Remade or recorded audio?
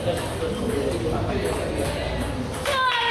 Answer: recorded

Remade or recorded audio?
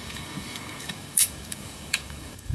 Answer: remade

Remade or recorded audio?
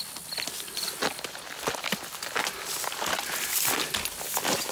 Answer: recorded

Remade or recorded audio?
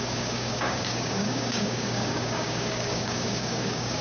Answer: remade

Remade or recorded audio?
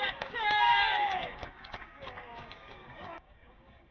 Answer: remade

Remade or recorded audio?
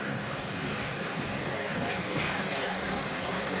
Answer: remade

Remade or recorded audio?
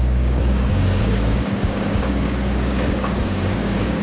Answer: remade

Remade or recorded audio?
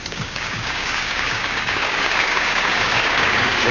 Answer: remade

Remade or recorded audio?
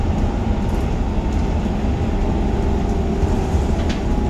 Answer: recorded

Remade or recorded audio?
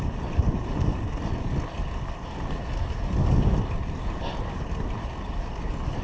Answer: recorded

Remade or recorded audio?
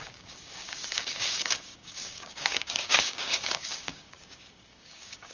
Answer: remade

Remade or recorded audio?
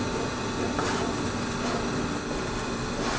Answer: recorded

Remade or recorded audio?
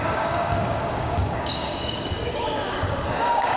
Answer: remade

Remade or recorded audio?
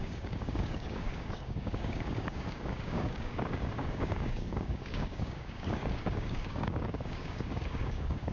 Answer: remade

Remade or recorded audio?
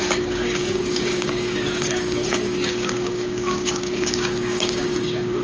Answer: remade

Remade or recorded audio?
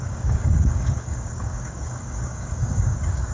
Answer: remade